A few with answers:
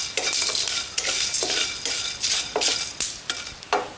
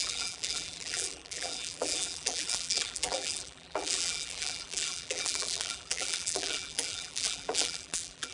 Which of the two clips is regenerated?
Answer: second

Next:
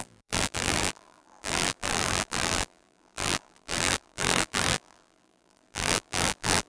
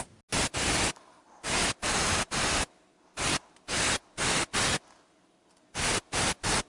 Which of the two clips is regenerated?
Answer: first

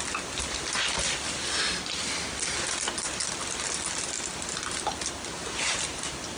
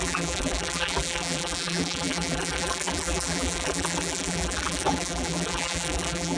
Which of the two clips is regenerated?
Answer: second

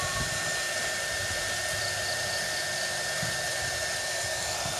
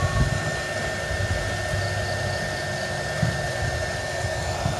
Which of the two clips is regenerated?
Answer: first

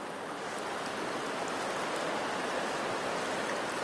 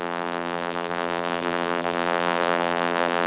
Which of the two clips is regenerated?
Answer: second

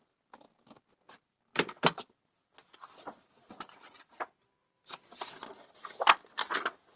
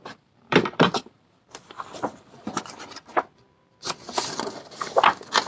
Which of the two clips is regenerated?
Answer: second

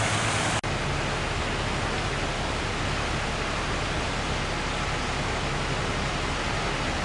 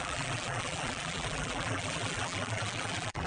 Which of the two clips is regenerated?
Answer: second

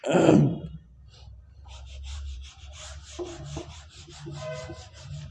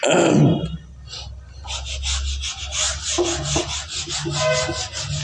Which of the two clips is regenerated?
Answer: first